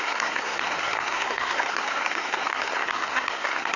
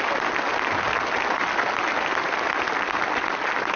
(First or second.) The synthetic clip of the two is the first